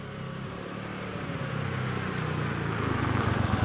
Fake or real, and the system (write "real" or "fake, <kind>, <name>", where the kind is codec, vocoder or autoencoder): real